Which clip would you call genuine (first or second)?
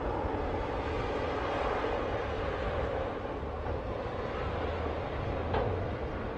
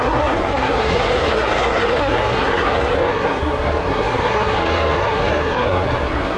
first